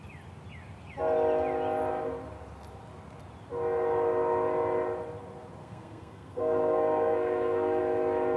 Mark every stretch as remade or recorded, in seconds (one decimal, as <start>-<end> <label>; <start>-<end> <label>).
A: 0.0-5.6 recorded; 5.6-7.8 remade; 7.8-8.4 recorded